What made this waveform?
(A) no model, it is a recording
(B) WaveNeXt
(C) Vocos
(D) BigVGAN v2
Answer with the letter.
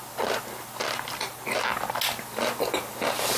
A